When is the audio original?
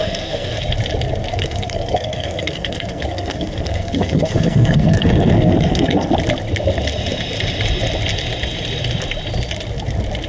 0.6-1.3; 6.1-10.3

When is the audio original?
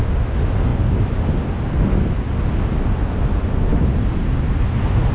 0.0-5.1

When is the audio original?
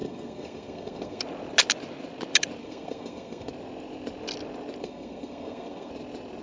1.2-2.6; 3.5-4.8; 5.9-6.4